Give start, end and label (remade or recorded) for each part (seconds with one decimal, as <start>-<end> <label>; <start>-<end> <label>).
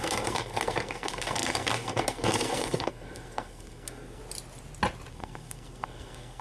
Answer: 0.0-4.2 remade; 4.2-5.1 recorded; 5.1-6.4 remade